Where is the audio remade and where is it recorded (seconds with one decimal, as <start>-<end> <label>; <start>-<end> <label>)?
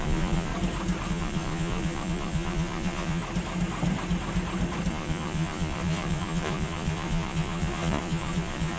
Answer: 0.0-0.5 remade; 0.5-1.1 recorded; 1.1-3.2 remade; 3.2-4.9 recorded; 4.9-8.8 remade